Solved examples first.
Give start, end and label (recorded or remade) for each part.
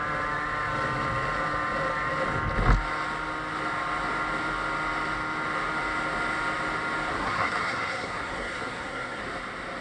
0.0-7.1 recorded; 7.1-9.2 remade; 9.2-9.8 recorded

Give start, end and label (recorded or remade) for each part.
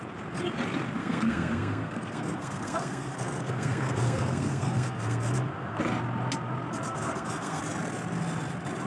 0.0-1.0 recorded; 1.0-5.8 remade; 5.8-6.9 recorded; 6.9-7.6 remade; 7.6-8.9 recorded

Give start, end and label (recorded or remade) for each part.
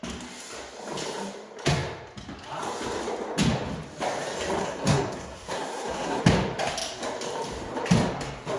0.0-4.6 recorded; 4.6-6.2 remade; 6.2-8.6 recorded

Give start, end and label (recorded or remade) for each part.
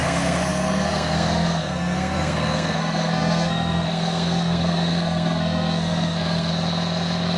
0.0-6.5 remade; 6.5-7.4 recorded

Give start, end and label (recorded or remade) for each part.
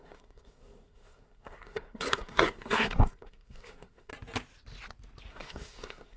0.0-4.1 remade; 4.1-5.3 recorded; 5.3-6.2 remade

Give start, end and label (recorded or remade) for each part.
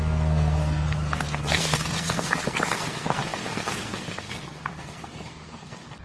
0.0-6.0 remade